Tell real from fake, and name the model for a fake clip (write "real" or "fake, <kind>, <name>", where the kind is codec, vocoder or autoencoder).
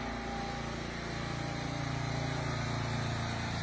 real